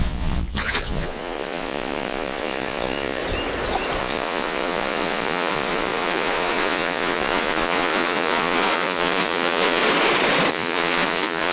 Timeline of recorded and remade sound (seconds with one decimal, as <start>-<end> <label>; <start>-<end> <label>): 0.0-3.2 remade; 3.2-4.0 recorded; 4.0-9.8 remade; 9.8-10.5 recorded; 10.5-11.5 remade